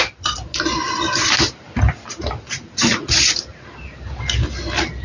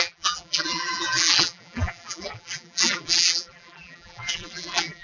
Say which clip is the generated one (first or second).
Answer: second